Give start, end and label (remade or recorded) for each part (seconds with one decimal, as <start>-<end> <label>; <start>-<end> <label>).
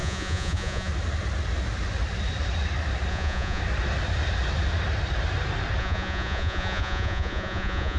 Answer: 0.0-0.9 remade; 0.9-3.1 recorded; 3.1-3.6 remade; 3.6-5.8 recorded; 5.8-8.0 remade